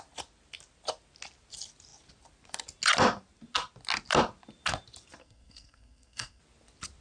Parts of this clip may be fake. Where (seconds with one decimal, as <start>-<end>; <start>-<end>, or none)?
5.2-6.4